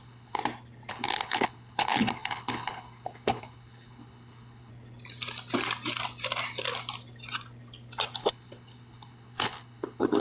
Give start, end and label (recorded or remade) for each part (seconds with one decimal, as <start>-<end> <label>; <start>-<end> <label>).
0.0-0.4 remade; 0.4-0.9 recorded; 0.9-4.7 remade; 4.7-8.2 recorded; 8.2-10.2 remade